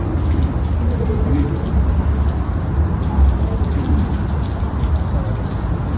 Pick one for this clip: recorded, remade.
recorded